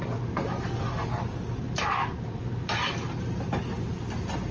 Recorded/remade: recorded